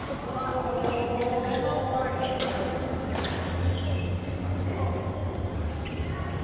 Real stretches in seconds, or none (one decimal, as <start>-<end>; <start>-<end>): 0.0-6.4